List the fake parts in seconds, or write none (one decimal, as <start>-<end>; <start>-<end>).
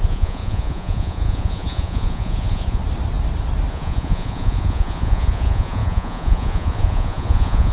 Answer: 0.0-2.8; 3.7-7.7